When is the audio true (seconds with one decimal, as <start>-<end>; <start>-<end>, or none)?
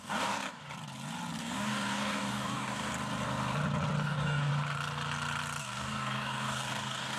0.6-1.4; 2.9-4.0; 4.5-5.6